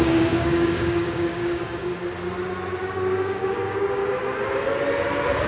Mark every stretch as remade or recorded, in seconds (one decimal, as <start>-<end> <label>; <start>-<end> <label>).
0.0-1.9 remade; 1.9-2.8 recorded; 2.8-4.0 remade; 4.0-5.5 recorded